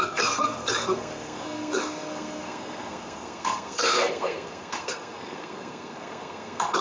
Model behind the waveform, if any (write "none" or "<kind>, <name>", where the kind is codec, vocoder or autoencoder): codec, SNAC